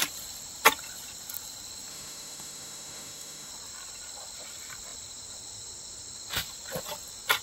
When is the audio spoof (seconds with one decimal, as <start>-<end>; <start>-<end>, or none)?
1.9-3.5